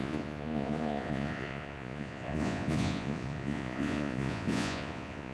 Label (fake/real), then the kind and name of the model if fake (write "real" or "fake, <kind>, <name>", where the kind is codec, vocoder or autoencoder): fake, vocoder, Vocos